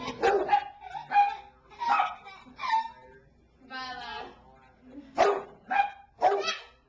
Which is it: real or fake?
real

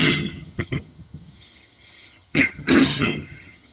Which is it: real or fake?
fake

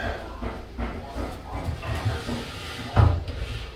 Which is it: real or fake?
real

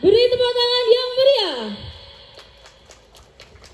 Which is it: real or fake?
real